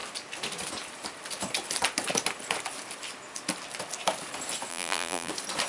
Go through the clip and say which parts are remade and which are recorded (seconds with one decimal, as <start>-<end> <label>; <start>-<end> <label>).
0.0-4.7 recorded; 4.7-5.3 remade; 5.3-5.7 recorded